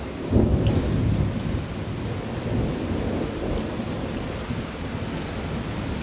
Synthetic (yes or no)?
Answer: no